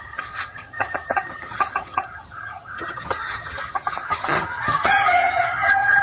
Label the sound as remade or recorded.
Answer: remade